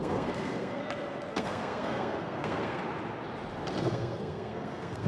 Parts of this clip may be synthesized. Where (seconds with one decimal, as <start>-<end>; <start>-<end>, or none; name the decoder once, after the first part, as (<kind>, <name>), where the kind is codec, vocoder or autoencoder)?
0.0-0.8 (codec, SNAC); 1.3-2.8; 3.8-5.1